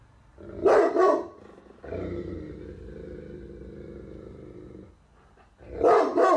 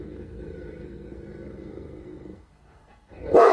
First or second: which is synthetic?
second